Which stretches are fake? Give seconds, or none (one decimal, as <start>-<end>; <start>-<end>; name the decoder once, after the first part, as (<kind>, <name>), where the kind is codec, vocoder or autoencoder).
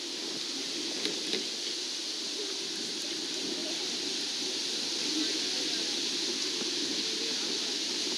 none